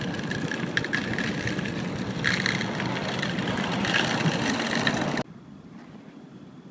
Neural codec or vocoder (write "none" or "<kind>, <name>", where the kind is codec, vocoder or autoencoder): none